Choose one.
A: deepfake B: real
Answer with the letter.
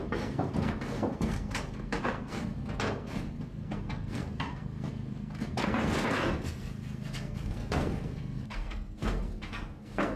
A